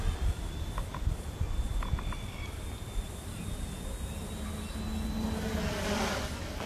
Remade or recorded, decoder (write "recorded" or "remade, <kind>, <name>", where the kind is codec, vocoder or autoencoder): recorded